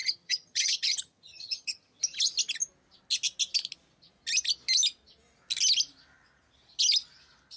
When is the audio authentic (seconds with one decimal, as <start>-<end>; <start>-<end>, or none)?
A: 2.0-7.6